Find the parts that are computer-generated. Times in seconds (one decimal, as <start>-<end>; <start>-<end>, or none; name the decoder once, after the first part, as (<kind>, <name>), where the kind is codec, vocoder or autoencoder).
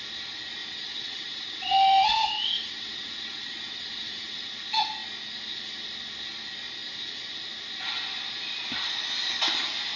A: 0.6-4.5 (vocoder, WaveNeXt)